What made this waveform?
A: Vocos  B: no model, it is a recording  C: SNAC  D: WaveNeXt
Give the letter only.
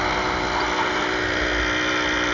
B